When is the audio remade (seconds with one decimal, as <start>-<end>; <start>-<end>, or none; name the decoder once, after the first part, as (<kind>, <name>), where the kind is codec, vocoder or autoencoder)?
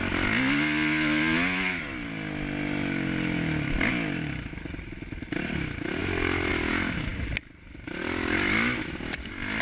none